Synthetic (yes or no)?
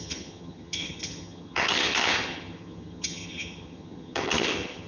yes